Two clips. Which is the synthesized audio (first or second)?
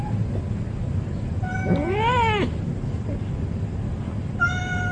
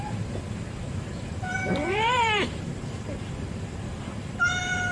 second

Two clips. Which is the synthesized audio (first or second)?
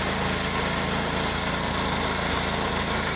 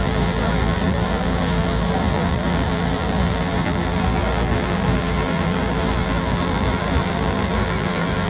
second